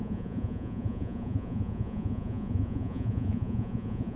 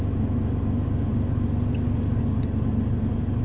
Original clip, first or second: second